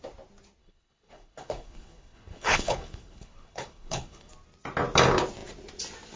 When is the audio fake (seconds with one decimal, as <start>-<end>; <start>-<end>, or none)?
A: 0.6-4.3